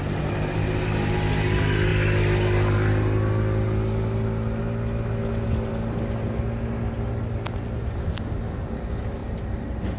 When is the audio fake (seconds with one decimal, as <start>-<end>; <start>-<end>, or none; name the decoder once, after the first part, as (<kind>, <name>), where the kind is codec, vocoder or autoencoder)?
none